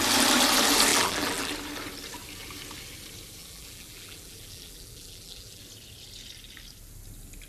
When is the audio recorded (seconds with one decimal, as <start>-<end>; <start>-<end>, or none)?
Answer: 0.0-0.9; 1.5-3.4; 5.6-7.5